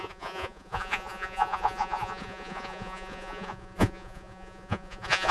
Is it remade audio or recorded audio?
remade